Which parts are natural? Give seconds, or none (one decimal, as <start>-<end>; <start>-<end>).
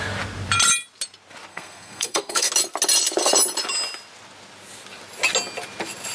0.0-1.5; 2.5-6.1